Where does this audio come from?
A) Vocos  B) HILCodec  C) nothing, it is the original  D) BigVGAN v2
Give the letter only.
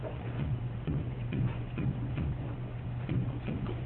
A